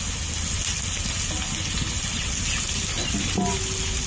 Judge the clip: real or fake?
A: real